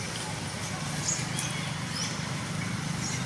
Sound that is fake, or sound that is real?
real